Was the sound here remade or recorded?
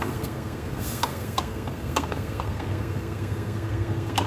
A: remade